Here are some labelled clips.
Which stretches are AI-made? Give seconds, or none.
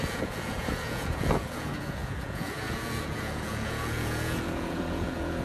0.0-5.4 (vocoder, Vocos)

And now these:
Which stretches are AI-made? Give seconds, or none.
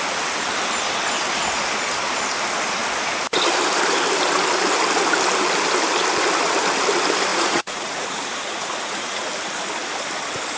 7.3-9.3 (vocoder, Vocos)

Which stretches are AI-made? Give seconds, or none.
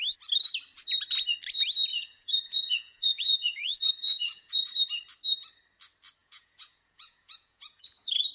1.9-4.5 (vocoder, Vocos); 6.2-8.3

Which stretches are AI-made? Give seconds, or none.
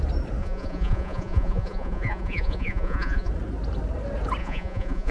0.4-3.3 (vocoder, Vocos); 4.4-5.1